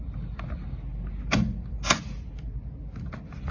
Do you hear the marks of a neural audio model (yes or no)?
no